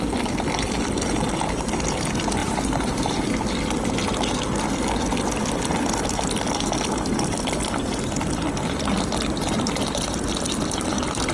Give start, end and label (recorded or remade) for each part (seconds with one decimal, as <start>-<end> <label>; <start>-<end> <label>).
0.0-2.4 recorded; 2.4-3.3 remade; 3.3-11.3 recorded